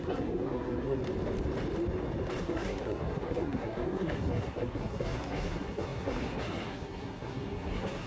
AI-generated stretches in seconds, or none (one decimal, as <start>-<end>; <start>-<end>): 0.0-1.0; 2.4-8.1